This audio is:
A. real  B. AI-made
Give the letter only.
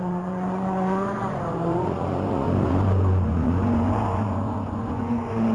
B